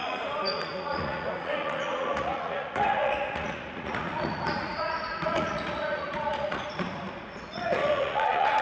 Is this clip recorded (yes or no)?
no